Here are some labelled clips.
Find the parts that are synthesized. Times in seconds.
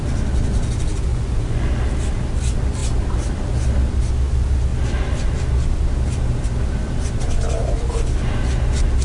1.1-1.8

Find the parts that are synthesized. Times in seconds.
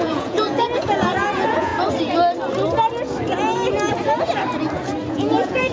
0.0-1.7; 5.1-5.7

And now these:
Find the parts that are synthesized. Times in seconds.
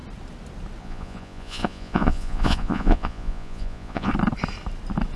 0.8-4.1